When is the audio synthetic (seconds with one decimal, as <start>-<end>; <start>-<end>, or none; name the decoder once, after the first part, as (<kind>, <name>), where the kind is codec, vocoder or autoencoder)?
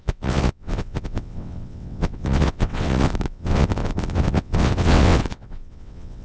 0.0-6.2 (vocoder, WaveNeXt)